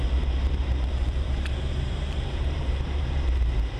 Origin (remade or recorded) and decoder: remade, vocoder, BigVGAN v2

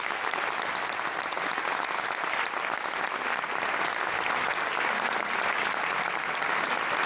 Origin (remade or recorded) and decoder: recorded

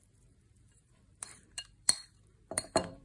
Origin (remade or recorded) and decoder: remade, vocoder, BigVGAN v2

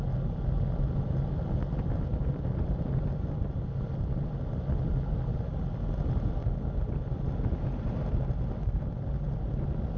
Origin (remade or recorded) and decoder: recorded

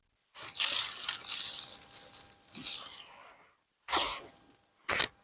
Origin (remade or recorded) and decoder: recorded